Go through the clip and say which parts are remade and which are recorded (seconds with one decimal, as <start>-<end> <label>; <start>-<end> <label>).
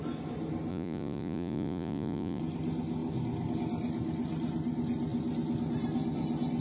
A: 0.0-0.7 recorded; 0.7-2.4 remade; 2.4-6.6 recorded